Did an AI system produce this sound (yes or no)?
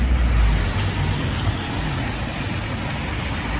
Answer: no